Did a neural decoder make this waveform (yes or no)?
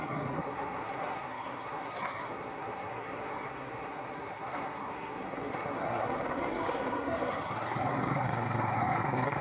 yes